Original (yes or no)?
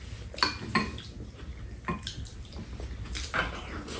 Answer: yes